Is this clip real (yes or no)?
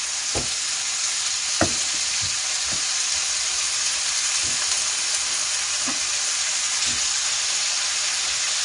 yes